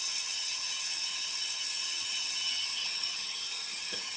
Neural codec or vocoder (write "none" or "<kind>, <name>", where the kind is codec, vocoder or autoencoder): vocoder, HiFi-GAN